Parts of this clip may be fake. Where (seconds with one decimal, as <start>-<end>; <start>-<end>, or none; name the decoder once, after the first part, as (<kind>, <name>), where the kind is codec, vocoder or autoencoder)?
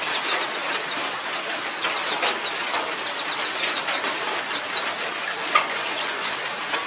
5.4-6.3 (vocoder, Vocos)